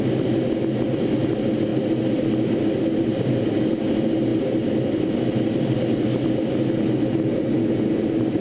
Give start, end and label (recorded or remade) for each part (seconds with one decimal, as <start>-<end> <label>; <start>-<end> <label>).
0.0-8.4 recorded